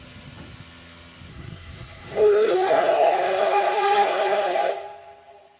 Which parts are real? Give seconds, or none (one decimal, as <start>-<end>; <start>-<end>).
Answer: 0.0-1.3; 4.7-5.6